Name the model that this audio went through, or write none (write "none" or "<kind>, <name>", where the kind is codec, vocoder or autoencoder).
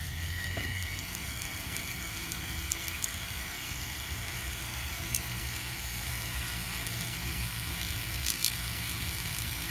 codec, SNAC